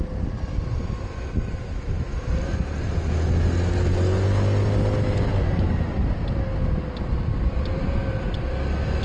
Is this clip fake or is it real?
real